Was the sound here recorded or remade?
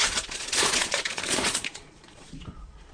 remade